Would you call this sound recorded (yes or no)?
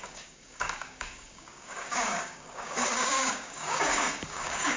no